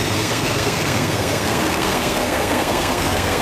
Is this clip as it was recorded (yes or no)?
no